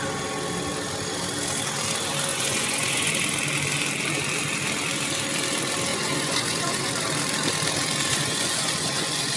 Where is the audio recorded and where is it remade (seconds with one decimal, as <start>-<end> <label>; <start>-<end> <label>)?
0.0-2.3 recorded; 2.3-3.1 remade; 3.1-5.9 recorded; 5.9-6.9 remade; 6.9-8.1 recorded; 8.1-9.4 remade